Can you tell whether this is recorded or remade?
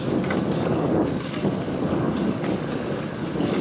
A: remade